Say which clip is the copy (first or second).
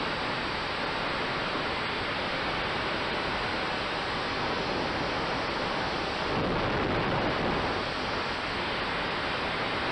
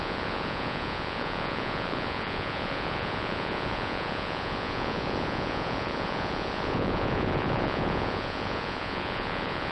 second